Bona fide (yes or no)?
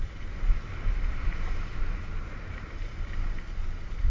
yes